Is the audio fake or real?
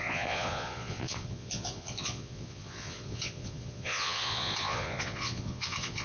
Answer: fake